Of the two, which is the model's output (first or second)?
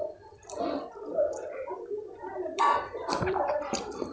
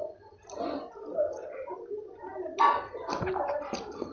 first